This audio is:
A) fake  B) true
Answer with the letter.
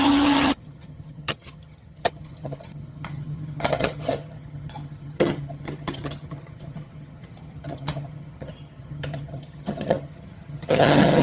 A